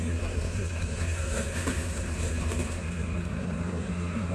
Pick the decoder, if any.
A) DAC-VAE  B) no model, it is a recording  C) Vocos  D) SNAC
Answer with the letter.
D